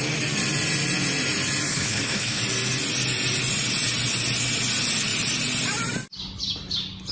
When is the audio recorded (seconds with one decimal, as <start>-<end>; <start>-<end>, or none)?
0.0-1.7; 2.4-7.1